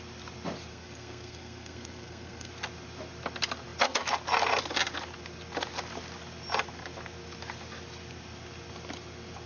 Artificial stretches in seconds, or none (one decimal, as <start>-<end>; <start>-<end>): 0.7-2.5